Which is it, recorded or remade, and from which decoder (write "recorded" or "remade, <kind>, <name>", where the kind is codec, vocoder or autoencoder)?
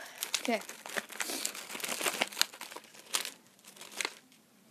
recorded